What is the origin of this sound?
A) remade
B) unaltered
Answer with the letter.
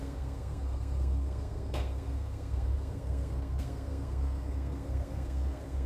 A